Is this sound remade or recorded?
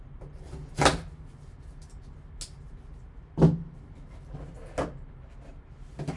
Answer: recorded